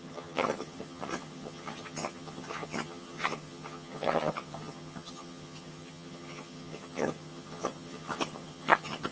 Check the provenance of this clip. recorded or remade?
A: remade